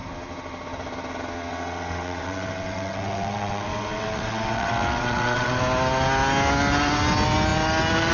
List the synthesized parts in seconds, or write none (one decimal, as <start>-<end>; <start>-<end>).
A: 1.5-5.6

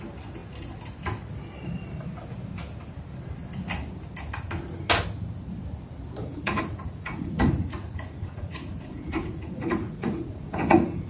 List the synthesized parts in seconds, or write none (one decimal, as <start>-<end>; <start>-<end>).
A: 6.2-11.1